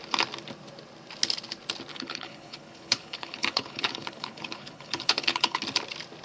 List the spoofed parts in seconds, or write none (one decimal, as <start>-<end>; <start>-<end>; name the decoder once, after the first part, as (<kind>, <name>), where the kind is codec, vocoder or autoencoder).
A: 1.9-5.6 (codec, HILCodec)